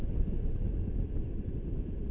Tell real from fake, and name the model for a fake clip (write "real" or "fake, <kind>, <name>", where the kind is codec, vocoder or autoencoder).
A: real